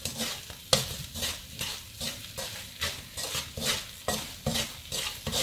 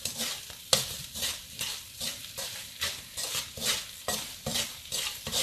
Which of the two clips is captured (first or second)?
first